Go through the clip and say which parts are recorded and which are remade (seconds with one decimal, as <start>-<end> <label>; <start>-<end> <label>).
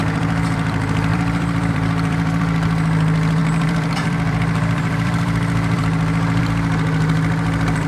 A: 0.0-7.9 remade